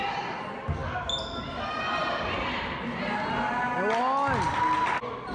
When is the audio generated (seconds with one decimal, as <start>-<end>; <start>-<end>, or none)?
none